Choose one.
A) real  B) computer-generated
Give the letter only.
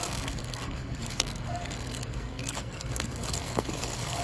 B